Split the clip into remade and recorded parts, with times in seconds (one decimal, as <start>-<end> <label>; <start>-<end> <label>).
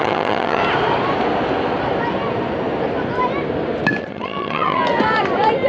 0.0-0.6 remade; 0.6-4.0 recorded; 4.0-4.8 remade; 4.8-5.7 recorded